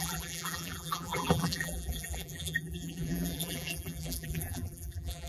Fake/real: fake